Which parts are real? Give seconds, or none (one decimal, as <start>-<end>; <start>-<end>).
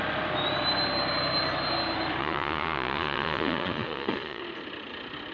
0.0-2.2; 4.4-5.3